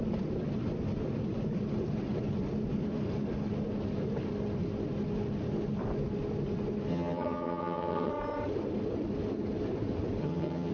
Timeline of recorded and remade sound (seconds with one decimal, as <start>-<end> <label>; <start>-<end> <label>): 0.0-6.9 recorded; 6.9-8.1 remade; 8.1-10.2 recorded; 10.2-10.7 remade